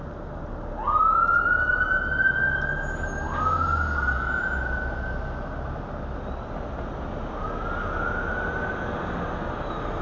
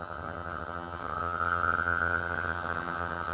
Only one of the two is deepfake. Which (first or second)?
second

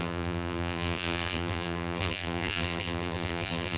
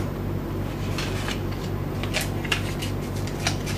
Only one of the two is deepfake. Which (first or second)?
first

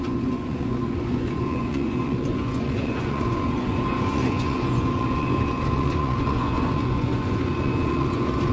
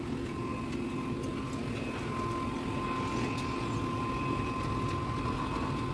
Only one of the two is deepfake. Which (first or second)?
first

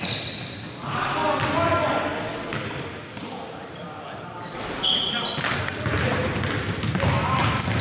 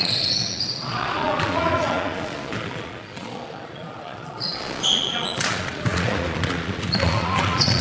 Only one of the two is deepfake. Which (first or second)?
second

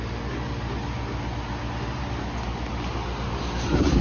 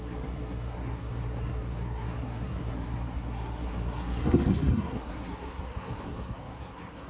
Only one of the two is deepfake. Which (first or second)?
second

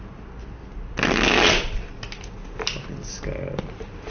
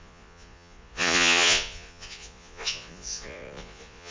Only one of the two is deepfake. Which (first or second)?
second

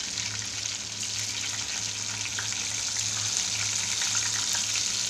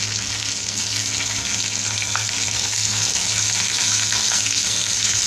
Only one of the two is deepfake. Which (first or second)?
second